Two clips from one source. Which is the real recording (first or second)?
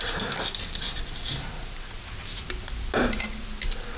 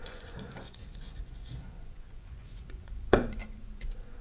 first